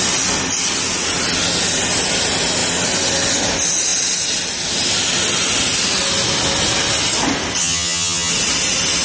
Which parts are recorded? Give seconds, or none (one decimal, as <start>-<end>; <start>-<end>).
0.0-7.6; 8.3-9.0